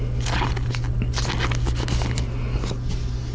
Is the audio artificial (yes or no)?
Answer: no